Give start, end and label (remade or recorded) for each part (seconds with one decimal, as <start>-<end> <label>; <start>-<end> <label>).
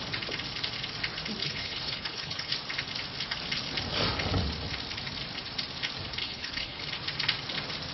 0.0-1.4 recorded; 1.4-2.5 remade; 2.5-6.2 recorded; 6.2-6.8 remade; 6.8-7.9 recorded